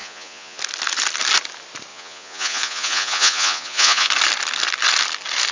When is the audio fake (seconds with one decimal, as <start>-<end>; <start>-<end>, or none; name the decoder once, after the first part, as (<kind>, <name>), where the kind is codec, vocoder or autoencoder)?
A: 0.0-0.6 (vocoder, Vocos); 1.9-4.1